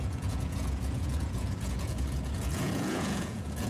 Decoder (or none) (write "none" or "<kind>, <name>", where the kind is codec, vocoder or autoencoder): vocoder, Vocos